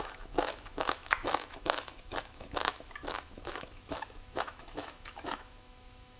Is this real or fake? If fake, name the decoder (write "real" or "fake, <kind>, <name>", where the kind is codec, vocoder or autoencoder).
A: fake, autoencoder, DAC-VAE